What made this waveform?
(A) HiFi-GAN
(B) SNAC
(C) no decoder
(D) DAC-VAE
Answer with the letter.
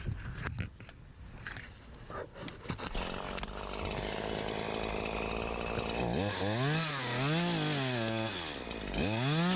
C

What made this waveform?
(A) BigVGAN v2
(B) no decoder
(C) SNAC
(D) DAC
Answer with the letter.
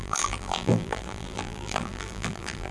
A